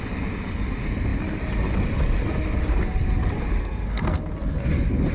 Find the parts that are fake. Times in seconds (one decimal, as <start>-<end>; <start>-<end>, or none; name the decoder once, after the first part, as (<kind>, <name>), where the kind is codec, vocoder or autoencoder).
3.6-4.3 (codec, SNAC)